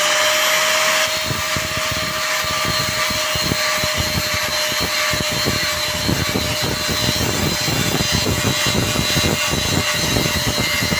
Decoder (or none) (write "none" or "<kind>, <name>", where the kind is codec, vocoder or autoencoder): none